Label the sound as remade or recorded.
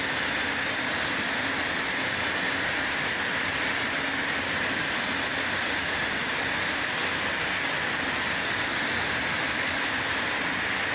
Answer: recorded